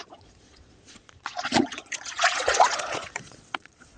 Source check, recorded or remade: remade